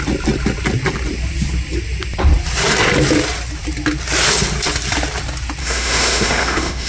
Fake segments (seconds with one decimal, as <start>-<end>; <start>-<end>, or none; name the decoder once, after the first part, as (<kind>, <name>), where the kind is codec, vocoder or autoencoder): 5.6-6.9 (autoencoder, DAC-VAE)

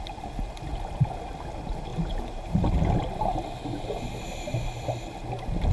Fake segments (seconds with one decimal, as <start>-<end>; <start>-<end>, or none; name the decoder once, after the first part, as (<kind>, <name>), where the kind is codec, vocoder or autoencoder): 1.9-2.6 (vocoder, BigVGAN v2)